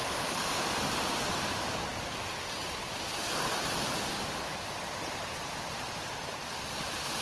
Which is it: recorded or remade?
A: remade